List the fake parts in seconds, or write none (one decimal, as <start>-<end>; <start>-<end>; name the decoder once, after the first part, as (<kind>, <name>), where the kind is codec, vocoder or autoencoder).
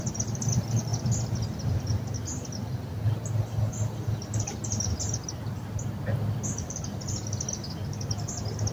0.9-2.0 (vocoder, BigVGAN v2); 7.8-8.7